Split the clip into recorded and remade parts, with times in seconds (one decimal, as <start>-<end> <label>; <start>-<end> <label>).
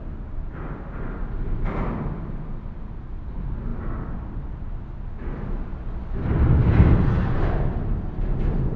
0.0-8.8 recorded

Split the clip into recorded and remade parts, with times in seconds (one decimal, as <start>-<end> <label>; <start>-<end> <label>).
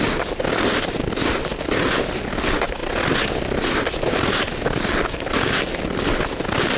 0.0-6.8 recorded